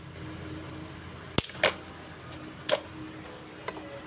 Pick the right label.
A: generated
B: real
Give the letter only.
B